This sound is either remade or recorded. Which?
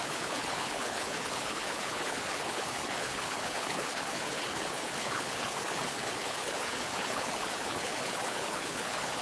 remade